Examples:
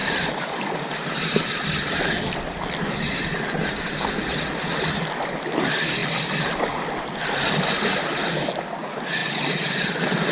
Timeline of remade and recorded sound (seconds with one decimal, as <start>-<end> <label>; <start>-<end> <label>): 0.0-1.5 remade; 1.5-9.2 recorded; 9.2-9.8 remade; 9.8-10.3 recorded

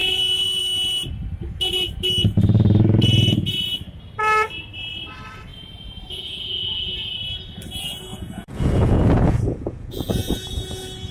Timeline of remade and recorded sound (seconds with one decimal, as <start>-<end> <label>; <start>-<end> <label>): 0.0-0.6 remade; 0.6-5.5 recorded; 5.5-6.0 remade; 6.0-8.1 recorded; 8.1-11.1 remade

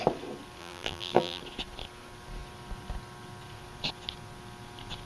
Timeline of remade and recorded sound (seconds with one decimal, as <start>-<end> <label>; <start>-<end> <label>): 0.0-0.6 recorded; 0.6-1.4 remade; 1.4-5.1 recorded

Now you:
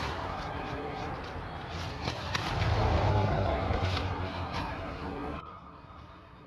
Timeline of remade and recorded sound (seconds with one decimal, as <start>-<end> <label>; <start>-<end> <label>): 0.0-1.1 remade; 1.1-1.9 recorded; 1.9-2.4 remade; 2.4-3.1 recorded; 3.1-6.5 remade